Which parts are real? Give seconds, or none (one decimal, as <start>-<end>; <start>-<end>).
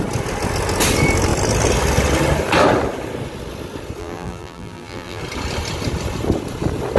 0.0-4.0; 5.2-7.0